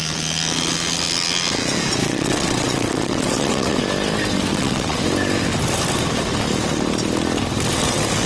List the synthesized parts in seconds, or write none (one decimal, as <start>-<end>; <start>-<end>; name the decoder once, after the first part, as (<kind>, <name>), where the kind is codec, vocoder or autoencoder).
2.0-3.8 (vocoder, WaveNeXt); 4.5-5.0